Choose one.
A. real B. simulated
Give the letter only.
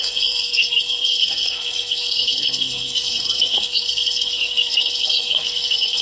B